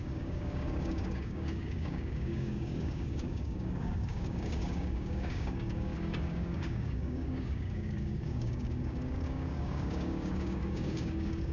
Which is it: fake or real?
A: fake